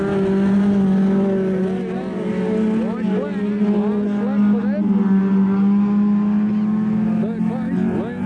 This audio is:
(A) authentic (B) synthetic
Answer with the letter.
A